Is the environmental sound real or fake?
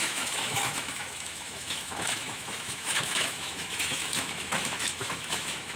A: fake